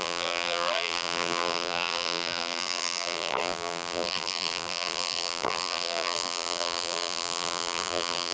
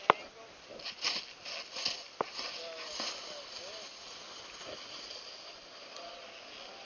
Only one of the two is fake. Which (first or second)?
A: first